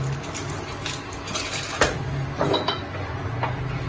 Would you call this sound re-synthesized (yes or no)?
no